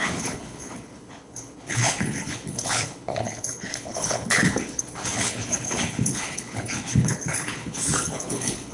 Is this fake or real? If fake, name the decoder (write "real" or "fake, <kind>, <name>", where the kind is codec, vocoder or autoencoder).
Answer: fake, codec, HILCodec